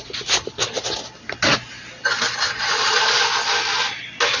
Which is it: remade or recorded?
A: recorded